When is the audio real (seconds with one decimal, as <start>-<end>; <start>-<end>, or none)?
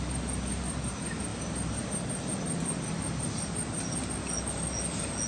0.0-5.3